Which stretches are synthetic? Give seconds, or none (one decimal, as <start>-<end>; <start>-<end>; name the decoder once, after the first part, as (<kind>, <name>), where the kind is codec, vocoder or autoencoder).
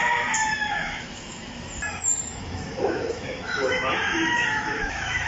0.6-1.5 (autoencoder, DAC-VAE); 2.3-5.3